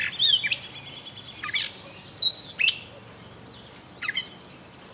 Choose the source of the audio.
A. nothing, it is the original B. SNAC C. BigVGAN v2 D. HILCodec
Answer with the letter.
A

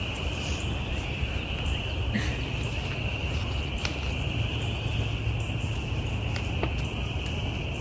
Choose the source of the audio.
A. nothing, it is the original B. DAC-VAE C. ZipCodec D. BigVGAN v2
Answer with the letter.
A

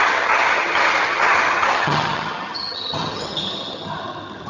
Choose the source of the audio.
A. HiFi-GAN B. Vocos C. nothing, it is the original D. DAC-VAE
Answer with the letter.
A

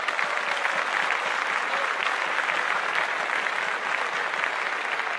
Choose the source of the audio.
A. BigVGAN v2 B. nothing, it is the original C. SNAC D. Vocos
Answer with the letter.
B